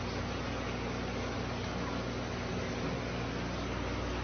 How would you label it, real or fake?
real